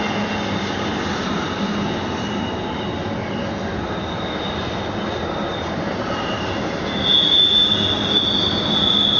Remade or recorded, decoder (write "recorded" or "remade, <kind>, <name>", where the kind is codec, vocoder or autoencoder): recorded